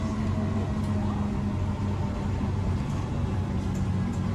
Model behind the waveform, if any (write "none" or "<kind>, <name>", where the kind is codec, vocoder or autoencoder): none